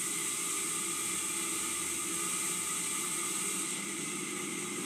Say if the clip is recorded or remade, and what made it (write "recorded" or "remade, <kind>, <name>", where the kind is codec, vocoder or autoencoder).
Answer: recorded